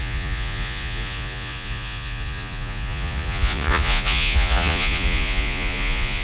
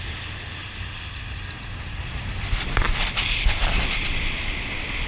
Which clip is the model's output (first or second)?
first